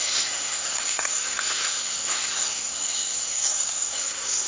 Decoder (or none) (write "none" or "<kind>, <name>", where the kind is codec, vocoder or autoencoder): codec, SNAC